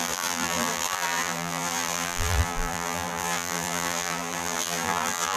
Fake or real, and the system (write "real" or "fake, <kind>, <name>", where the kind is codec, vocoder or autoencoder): fake, vocoder, BigVGAN v2